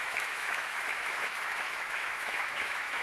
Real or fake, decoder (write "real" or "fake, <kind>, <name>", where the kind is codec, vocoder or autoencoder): fake, autoencoder, DAC-VAE